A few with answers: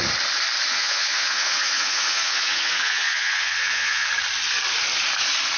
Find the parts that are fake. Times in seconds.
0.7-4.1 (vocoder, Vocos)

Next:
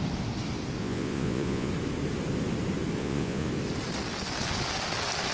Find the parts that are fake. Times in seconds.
0.8-1.7 (vocoder, Vocos); 3.0-3.5

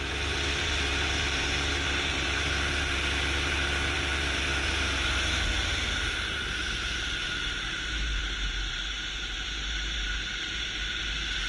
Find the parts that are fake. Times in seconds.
0.0-11.5 (vocoder, BigVGAN v2)

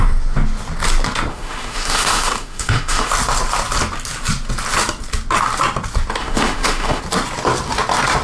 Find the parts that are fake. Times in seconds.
1.3-3.1 (autoencoder, DAC-VAE); 6.2-7.0

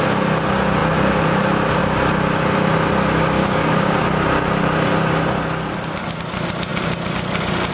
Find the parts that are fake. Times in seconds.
3.4-4.1 (codec, DAC)

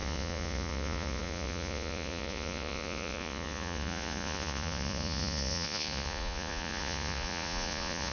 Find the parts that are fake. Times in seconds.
0.0-8.1 (vocoder, Vocos)